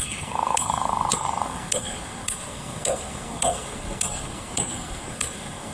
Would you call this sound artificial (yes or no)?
yes